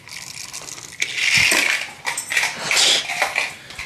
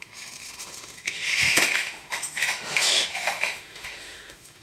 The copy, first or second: second